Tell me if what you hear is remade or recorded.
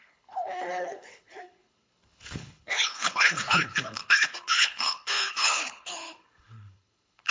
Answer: remade